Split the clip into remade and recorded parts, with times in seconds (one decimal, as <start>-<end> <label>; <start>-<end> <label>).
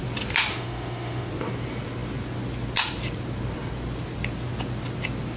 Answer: 0.0-0.5 recorded; 0.5-1.3 remade; 1.3-5.4 recorded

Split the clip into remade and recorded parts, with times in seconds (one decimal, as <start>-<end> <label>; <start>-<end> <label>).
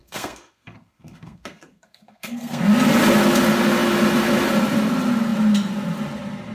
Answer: 0.0-2.6 remade; 2.6-6.5 recorded